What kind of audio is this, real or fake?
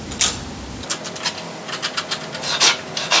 real